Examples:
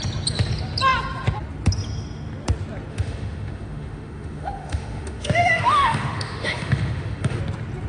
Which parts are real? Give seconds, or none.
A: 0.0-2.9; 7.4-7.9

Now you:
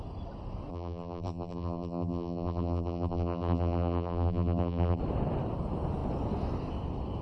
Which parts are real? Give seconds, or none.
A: 0.0-0.7; 5.0-7.2

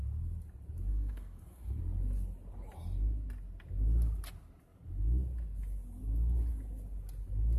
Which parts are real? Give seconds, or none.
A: 0.0-0.9; 1.8-7.6